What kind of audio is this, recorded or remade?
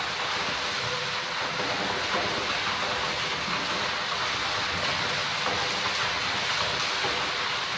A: recorded